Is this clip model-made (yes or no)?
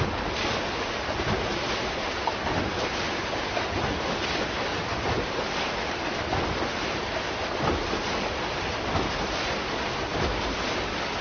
no